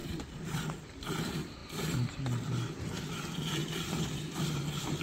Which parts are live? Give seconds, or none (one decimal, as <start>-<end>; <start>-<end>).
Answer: 0.6-3.6; 4.2-5.0